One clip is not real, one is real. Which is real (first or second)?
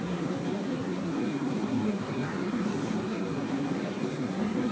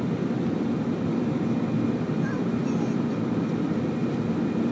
second